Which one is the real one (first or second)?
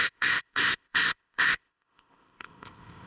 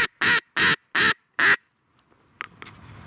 second